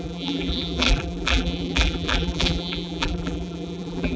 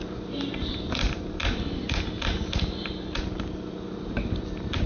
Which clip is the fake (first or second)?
first